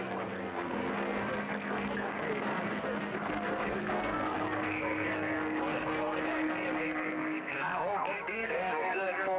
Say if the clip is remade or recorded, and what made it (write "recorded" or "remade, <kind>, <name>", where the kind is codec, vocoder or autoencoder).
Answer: remade, codec, SNAC